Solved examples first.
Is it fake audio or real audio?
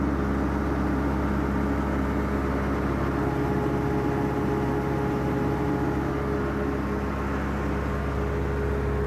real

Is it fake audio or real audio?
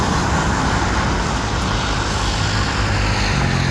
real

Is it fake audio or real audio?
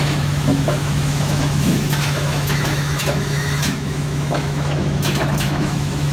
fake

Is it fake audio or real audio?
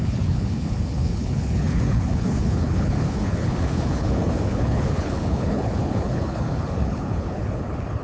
fake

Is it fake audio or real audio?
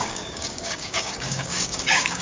fake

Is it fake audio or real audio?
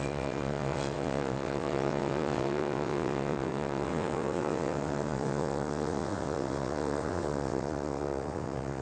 fake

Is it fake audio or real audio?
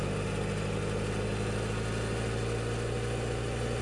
real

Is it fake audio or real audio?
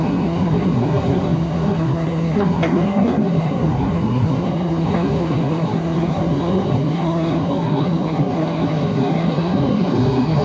fake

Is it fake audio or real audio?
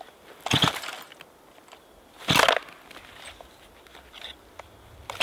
real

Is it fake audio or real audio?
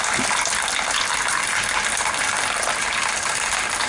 real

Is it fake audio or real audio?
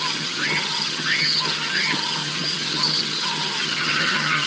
fake